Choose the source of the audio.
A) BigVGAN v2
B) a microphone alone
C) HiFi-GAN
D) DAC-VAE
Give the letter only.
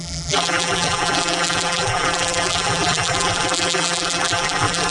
A